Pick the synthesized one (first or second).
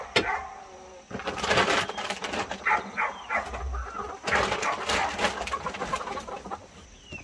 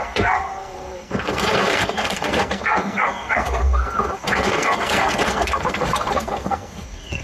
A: second